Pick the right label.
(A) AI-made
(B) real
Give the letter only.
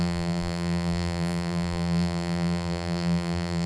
A